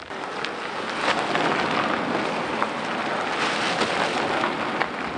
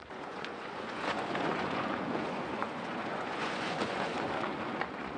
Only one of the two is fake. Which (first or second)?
second